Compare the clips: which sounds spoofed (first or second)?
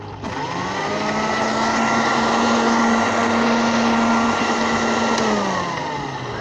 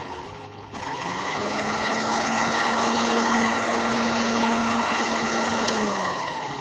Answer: second